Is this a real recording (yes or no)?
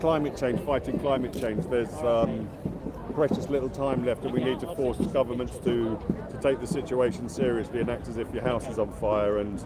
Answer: yes